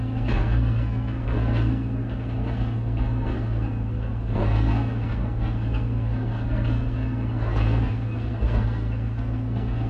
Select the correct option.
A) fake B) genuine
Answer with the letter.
A